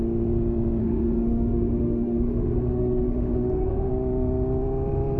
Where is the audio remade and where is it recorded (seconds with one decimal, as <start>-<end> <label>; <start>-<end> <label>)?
0.0-0.8 recorded; 0.8-3.9 remade; 3.9-5.2 recorded

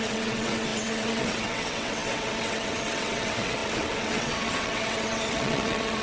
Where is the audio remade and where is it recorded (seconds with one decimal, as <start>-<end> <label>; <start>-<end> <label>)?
0.0-6.0 remade

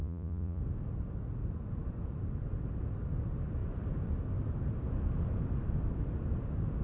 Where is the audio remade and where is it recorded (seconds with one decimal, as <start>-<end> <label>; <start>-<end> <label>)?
0.0-0.6 remade; 0.6-6.8 recorded

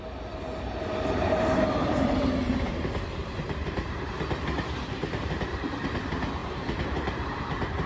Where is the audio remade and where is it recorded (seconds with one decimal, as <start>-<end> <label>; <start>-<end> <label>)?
0.0-0.9 recorded; 0.9-4.1 remade; 4.1-5.0 recorded; 5.0-5.7 remade; 5.7-6.4 recorded; 6.4-7.9 remade

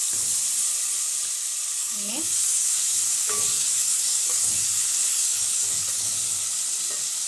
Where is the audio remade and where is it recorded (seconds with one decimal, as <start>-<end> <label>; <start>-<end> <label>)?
0.0-1.8 recorded; 1.8-6.2 remade; 6.2-7.3 recorded

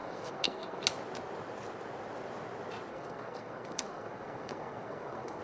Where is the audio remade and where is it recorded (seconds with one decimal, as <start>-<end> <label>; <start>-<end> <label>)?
0.0-0.8 remade; 0.8-2.9 recorded; 2.9-5.4 remade